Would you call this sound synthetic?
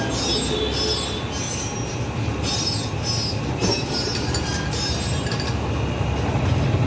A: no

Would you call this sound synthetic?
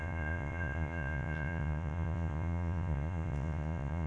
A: yes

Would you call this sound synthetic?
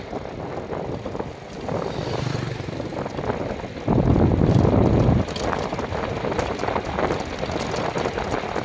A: no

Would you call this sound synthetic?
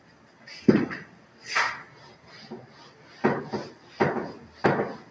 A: no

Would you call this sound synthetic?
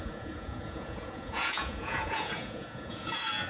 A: yes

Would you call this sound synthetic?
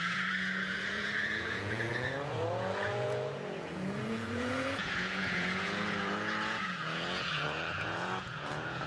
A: yes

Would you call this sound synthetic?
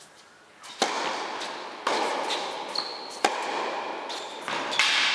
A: no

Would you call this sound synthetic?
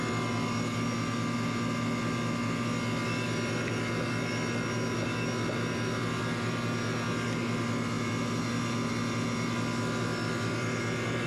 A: no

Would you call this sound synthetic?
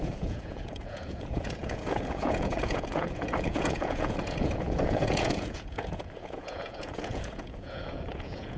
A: yes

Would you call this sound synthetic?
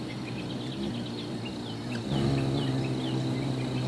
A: no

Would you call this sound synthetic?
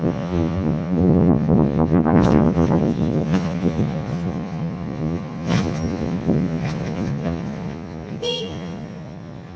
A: yes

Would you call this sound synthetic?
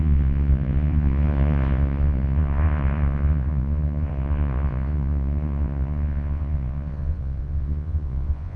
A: yes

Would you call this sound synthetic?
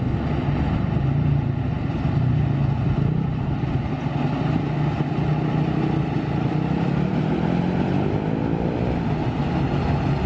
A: no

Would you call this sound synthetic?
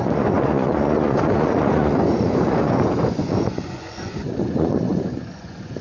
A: yes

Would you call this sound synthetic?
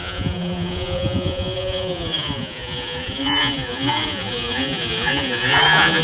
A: yes